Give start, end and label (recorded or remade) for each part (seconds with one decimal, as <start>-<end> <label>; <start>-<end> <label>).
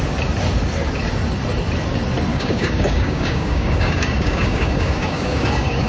0.0-2.3 recorded; 2.3-5.9 remade